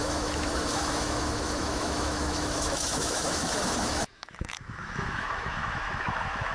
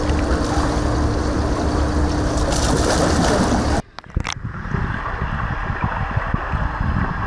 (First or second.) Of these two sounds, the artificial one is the first